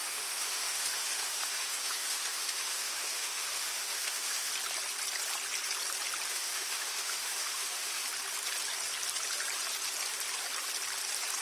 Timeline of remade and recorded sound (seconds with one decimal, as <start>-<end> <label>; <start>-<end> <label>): 0.0-4.5 remade; 4.5-6.3 recorded; 6.3-8.0 remade; 8.0-11.4 recorded